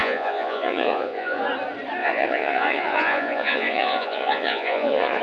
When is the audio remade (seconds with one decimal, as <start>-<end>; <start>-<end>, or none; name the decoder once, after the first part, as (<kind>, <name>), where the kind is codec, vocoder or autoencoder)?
0.0-1.4 (vocoder, Vocos); 2.0-5.2